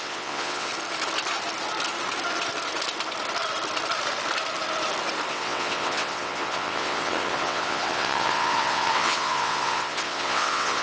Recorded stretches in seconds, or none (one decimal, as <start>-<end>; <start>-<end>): 0.7-5.3